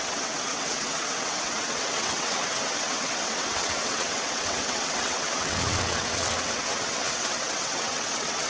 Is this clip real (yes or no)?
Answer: no